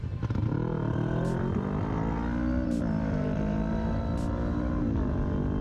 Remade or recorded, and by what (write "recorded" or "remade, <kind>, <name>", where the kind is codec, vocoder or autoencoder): recorded